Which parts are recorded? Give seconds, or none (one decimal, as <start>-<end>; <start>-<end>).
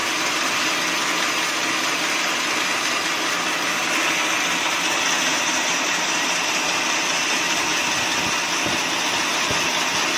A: 0.0-5.3; 6.4-10.2